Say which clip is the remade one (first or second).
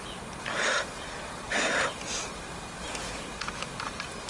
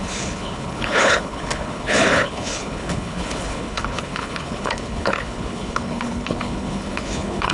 second